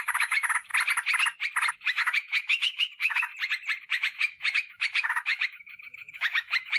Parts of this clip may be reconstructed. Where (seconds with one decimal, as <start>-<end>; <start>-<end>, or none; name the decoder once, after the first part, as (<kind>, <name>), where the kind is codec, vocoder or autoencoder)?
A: 0.0-0.7 (autoencoder, DAC-VAE); 1.7-3.3; 3.8-6.8